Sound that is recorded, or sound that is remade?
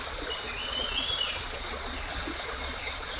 remade